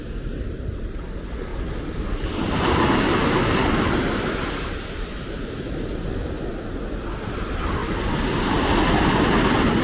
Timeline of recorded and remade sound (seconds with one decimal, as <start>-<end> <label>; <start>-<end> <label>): 0.0-9.8 recorded